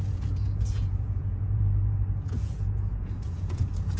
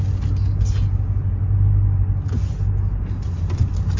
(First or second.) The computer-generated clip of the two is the first